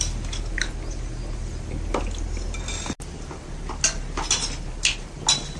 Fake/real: real